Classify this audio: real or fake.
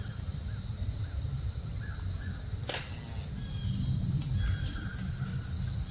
real